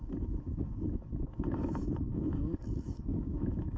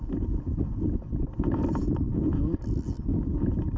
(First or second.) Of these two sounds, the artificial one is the first